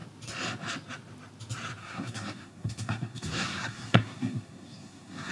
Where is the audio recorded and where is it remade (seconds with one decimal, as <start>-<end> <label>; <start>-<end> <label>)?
0.0-1.8 recorded; 1.8-5.3 remade